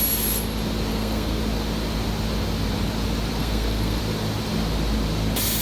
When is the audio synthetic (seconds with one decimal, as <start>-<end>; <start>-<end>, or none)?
0.9-1.4; 3.4-4.0